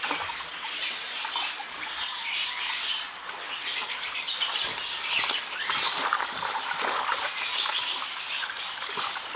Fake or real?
real